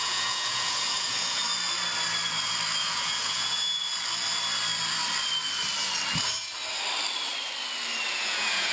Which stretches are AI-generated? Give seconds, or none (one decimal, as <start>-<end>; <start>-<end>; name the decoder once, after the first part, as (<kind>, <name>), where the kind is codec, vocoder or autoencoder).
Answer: 0.0-1.4 (vocoder, Vocos); 2.8-3.9; 8.1-8.7